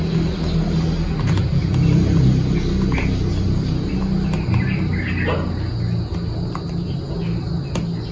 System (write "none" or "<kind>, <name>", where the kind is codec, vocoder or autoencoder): none